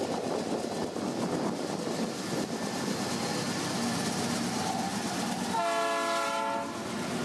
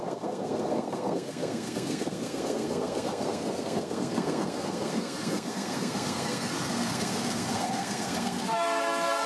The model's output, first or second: second